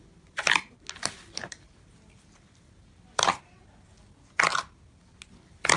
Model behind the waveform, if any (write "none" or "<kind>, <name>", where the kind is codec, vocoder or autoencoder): none